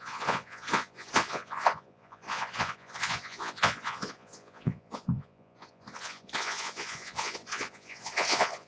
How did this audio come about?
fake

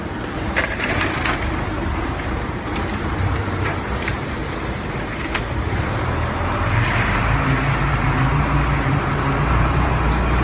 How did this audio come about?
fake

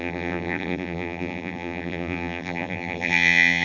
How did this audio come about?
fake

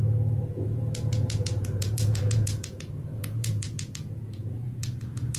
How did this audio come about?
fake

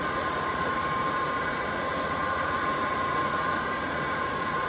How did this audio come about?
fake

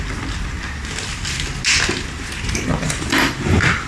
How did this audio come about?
real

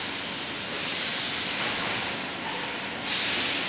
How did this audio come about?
real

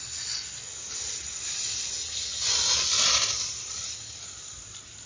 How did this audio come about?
real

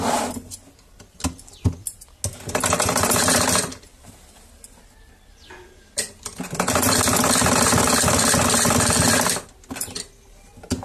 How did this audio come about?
real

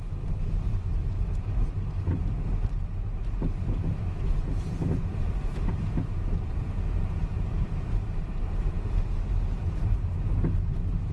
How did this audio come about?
fake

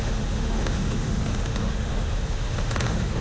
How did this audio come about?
fake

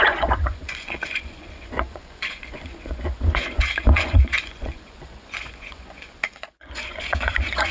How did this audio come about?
fake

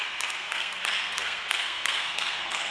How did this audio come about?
fake